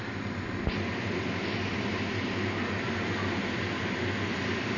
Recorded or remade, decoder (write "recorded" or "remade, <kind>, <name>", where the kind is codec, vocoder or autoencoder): recorded